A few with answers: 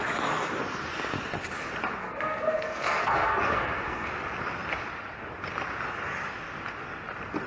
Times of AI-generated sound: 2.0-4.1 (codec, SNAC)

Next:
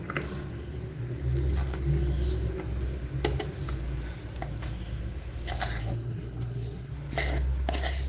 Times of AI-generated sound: 5.8-6.9 (codec, SNAC)

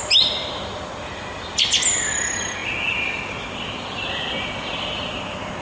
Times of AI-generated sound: none

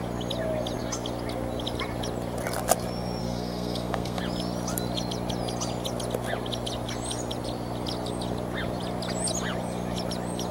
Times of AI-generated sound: 3.2-4.2 (codec, SNAC)

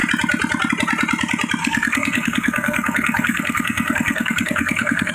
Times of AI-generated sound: 1.6-5.1 (codec, SNAC)

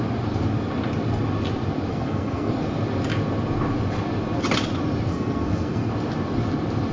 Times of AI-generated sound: 1.9-2.5 (codec, SNAC); 5.1-5.9

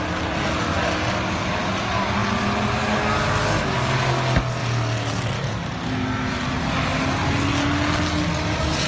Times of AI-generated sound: none

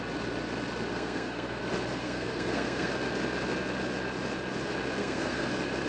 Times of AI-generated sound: 0.9-1.6 (codec, SNAC); 2.0-2.9; 5.0-5.5